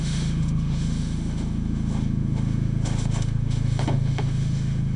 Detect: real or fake fake